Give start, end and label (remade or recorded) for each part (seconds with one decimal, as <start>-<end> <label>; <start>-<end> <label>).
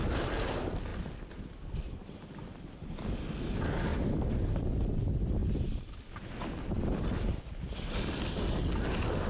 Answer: 0.0-0.9 recorded; 0.9-1.5 remade; 1.5-3.9 recorded; 3.9-5.0 remade; 5.0-5.4 recorded; 5.4-7.6 remade; 7.6-9.3 recorded